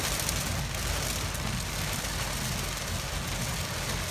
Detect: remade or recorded recorded